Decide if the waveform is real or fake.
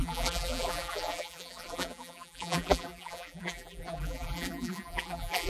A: fake